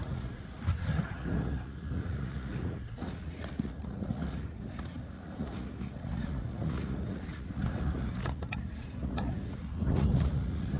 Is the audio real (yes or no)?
no